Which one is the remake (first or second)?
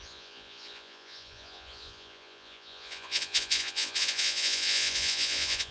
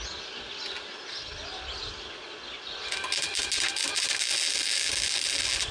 first